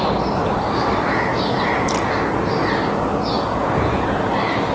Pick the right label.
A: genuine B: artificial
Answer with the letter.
A